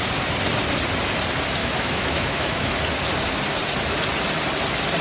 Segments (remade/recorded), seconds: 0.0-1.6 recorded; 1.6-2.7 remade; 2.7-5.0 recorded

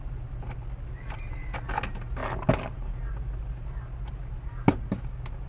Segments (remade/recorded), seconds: 0.0-5.5 recorded

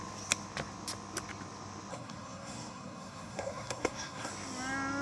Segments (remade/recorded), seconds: 0.0-1.9 recorded; 1.9-4.3 remade; 4.3-5.0 recorded

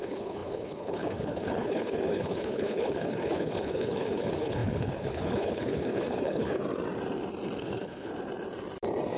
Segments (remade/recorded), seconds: 0.0-6.6 remade; 6.6-7.6 recorded; 7.6-8.1 remade; 8.1-9.2 recorded

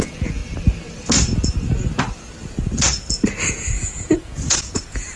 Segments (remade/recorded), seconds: 0.0-0.4 remade; 0.4-3.5 recorded; 3.5-5.2 remade

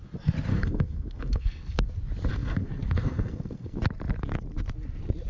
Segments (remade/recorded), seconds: 0.0-0.5 recorded; 0.5-1.9 remade; 1.9-2.3 recorded; 2.3-3.8 remade; 3.8-5.3 recorded

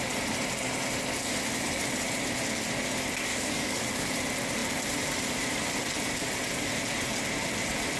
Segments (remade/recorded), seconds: 0.0-3.3 recorded; 3.3-4.1 remade; 4.1-8.0 recorded